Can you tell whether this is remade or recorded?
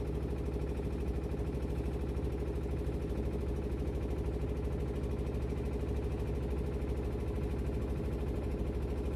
recorded